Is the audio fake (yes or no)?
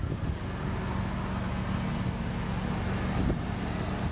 no